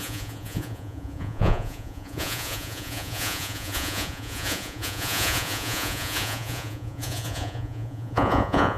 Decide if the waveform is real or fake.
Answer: fake